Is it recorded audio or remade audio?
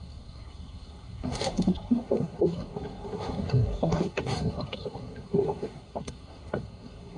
remade